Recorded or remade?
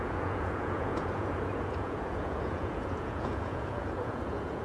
remade